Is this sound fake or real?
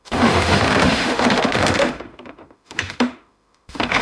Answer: fake